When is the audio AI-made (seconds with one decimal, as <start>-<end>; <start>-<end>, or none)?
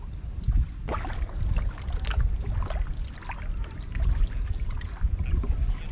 none